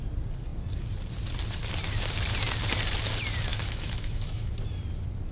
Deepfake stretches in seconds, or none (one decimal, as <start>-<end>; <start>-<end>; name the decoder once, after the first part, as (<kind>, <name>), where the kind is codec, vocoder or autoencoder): 3.5-4.5 (autoencoder, DAC-VAE)